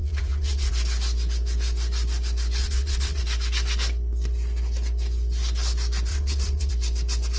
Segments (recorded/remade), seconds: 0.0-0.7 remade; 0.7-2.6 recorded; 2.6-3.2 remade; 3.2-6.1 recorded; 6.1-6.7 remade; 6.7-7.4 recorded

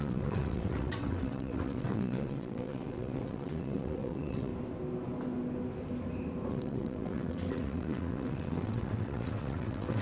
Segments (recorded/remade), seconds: 0.0-4.5 remade; 4.5-6.5 recorded; 6.5-10.0 remade

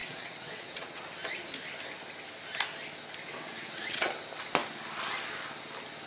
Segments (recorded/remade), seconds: 0.0-1.0 remade; 1.0-3.3 recorded; 3.3-4.1 remade; 4.1-6.1 recorded

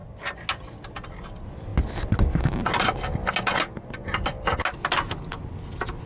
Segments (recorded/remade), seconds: 0.0-6.1 recorded

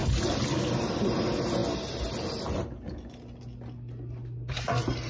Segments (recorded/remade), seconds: 0.0-5.1 recorded

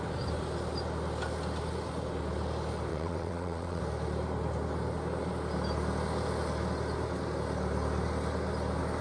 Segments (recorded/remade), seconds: 0.0-2.9 recorded; 2.9-3.8 remade; 3.8-9.0 recorded

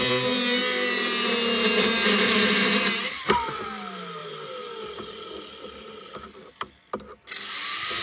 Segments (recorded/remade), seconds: 0.0-8.0 recorded